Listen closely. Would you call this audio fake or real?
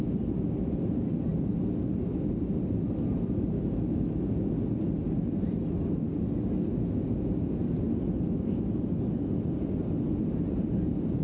real